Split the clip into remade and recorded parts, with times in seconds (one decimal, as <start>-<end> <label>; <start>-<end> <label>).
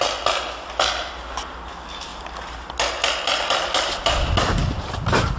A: 0.0-5.4 recorded